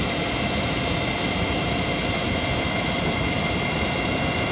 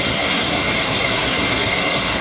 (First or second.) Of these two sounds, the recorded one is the first